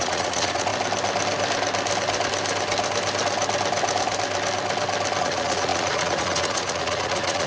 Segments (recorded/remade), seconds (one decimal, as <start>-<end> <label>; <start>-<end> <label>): 0.0-0.7 remade; 0.7-5.2 recorded; 5.2-7.5 remade